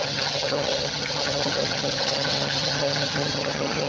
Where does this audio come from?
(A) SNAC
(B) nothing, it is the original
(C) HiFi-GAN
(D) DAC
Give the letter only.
C